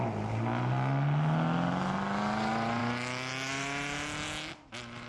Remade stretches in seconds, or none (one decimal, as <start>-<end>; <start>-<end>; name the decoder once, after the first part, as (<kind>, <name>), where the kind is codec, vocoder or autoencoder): none